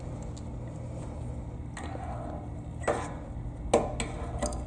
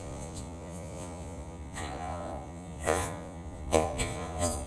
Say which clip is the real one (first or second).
first